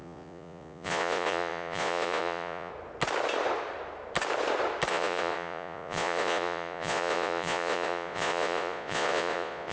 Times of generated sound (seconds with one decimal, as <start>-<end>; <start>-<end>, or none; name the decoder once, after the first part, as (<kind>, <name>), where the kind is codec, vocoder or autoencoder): 0.0-2.7 (vocoder, Vocos); 4.9-9.7

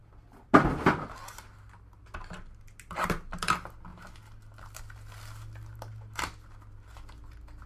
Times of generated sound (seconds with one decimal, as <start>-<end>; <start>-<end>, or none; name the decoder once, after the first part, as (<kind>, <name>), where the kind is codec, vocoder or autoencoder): none

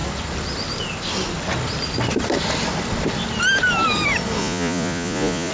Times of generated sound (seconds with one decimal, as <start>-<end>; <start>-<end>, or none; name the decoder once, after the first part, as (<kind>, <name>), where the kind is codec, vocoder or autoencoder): 4.4-5.5 (vocoder, Vocos)

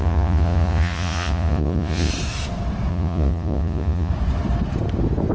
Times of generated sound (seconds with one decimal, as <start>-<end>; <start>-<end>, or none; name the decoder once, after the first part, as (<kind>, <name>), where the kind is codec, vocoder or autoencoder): 0.0-2.1 (vocoder, Vocos); 2.9-4.1

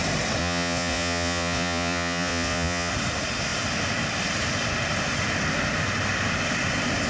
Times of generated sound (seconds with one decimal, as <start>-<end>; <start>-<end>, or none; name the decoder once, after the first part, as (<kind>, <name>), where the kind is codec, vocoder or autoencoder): 0.4-2.9 (vocoder, Vocos)

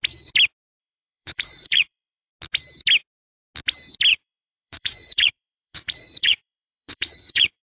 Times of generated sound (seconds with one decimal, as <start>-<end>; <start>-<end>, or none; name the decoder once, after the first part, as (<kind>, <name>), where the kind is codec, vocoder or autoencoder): 0.8-2.3 (vocoder, Vocos); 4.1-7.6

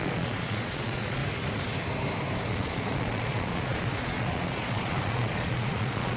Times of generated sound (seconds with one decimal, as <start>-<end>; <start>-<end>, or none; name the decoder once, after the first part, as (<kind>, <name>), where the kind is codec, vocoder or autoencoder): 0.0-1.2 (vocoder, Vocos); 2.5-6.2